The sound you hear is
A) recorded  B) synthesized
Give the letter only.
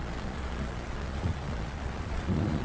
B